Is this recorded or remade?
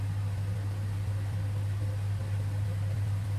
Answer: recorded